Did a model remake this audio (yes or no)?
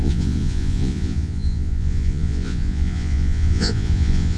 yes